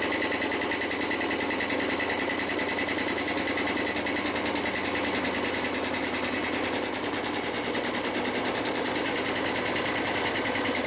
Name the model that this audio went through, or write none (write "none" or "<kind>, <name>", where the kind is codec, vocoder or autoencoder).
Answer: none